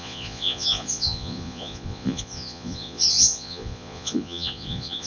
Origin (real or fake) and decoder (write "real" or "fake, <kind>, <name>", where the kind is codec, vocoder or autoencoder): fake, vocoder, Vocos